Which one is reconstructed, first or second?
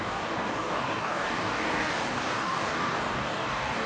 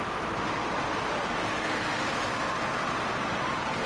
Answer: first